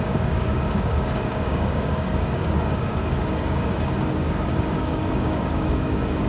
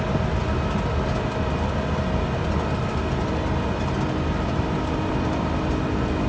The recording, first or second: second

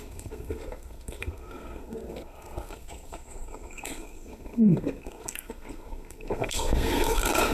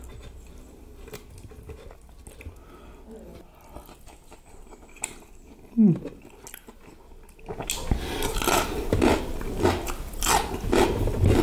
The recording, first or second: second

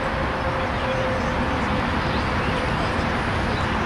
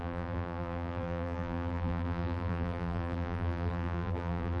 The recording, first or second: first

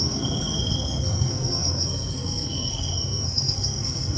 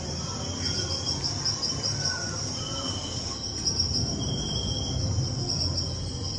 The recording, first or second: second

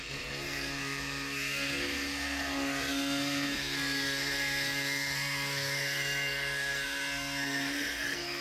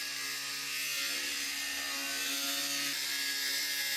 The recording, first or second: second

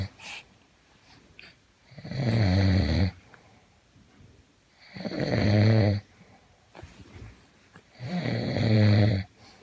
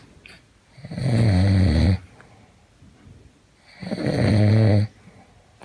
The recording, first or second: second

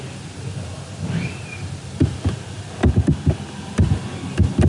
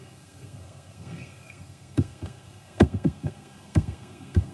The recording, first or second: first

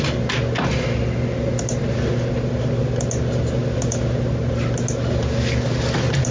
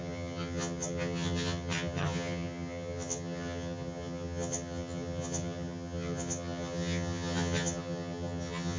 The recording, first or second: first